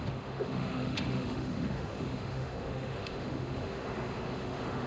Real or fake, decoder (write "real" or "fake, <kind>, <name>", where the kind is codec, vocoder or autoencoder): fake, autoencoder, DAC-VAE